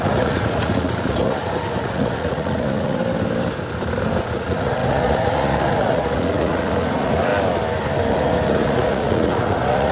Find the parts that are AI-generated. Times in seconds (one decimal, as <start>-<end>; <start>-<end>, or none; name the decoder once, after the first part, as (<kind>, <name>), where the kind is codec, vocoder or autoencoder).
0.0-3.0 (vocoder, Vocos); 4.3-7.3; 8.1-9.9